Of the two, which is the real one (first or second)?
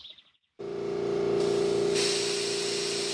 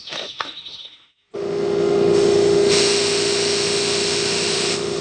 first